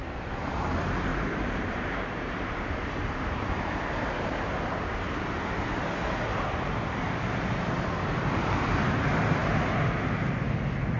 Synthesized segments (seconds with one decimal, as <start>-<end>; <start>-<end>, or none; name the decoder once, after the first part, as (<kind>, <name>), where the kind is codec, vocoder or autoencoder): 0.0-0.5 (vocoder, BigVGAN v2); 1.1-5.4; 6.3-7.0; 9.4-10.6